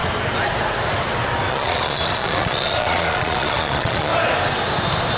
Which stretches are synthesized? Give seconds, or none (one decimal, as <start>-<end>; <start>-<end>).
1.5-4.1